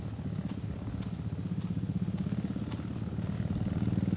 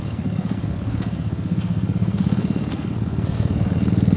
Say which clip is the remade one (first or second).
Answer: second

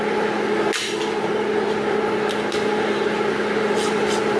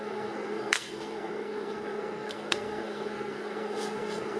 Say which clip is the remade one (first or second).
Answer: second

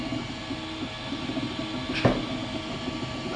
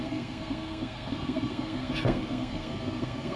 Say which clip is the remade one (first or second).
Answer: second